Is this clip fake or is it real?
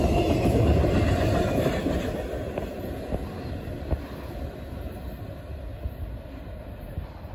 real